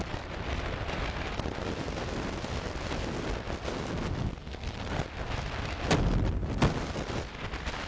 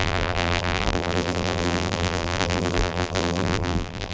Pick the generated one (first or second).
second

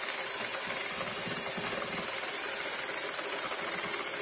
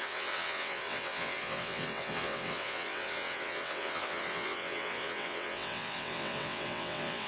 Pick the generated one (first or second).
second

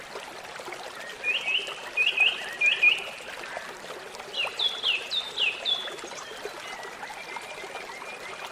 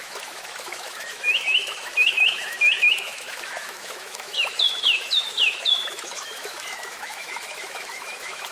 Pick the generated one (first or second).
second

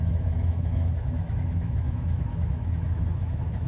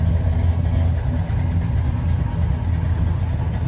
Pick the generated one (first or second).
first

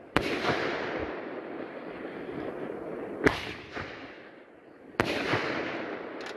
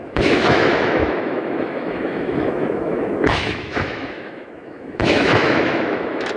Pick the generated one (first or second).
second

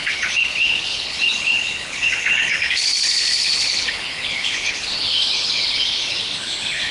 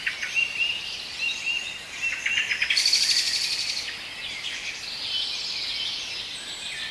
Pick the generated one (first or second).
first